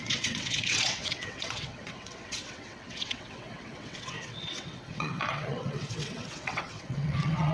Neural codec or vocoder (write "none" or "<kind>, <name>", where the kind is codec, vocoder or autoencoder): vocoder, WaveNeXt